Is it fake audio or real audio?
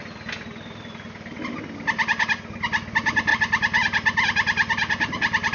real